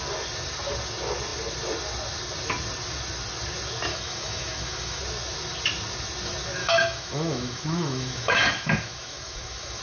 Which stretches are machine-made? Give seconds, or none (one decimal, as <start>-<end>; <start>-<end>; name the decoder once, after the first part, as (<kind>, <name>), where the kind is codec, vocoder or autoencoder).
3.9-5.0 (autoencoder, DAC-VAE); 6.6-9.8